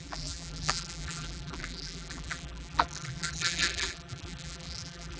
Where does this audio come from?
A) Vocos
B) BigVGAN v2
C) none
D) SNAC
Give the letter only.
B